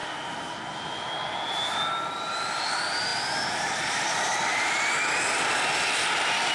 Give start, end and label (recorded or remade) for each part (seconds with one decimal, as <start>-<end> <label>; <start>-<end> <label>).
0.0-6.5 recorded